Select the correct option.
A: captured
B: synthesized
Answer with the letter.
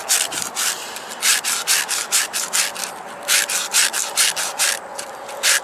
A